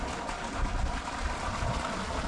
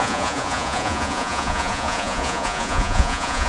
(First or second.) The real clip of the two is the first